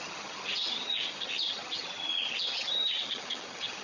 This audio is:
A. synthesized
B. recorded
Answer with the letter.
A